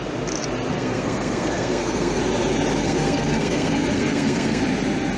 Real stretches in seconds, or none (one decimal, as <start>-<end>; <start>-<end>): 0.0-0.7; 2.2-2.8; 4.6-5.2